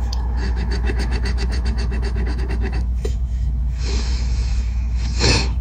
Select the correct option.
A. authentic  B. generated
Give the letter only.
B